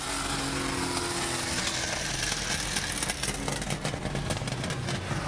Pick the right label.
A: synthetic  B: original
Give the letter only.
B